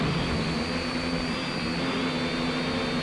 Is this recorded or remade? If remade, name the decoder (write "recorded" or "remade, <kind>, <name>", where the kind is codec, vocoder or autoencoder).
recorded